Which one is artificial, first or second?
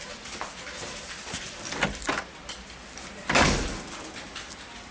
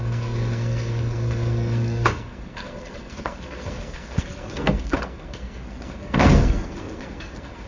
second